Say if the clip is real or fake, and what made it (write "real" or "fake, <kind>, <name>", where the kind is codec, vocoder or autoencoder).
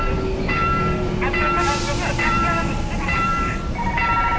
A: real